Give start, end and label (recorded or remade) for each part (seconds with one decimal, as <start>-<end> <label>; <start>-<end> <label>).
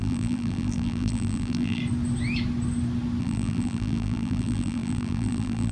0.0-1.8 remade; 1.8-3.2 recorded; 3.2-5.7 remade